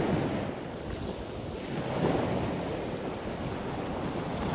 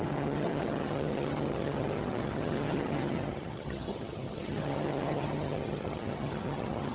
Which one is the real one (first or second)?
first